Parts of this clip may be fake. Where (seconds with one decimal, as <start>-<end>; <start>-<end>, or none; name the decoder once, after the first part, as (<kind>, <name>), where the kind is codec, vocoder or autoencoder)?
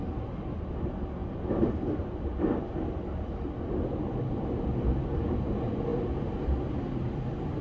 none